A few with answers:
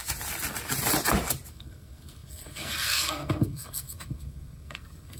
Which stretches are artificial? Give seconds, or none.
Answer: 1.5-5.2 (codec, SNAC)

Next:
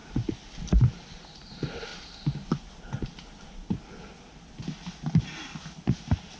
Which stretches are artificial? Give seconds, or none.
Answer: none

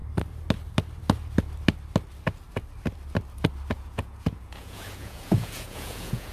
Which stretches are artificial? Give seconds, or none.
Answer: 3.7-6.3 (vocoder, Vocos)

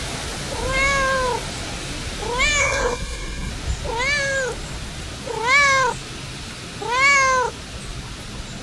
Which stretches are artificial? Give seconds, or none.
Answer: 2.6-3.5 (codec, SNAC)

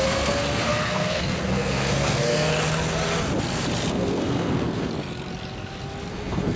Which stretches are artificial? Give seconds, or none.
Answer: 0.0-2.5 (codec, SNAC); 3.9-4.9; 6.1-6.6

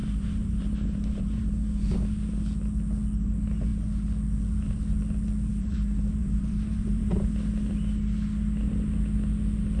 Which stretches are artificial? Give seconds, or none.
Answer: 0.0-2.0 (vocoder, BigVGAN v2); 5.5-7.3

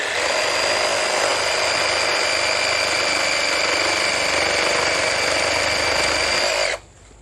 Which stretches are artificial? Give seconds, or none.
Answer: none